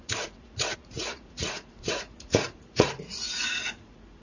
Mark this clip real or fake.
fake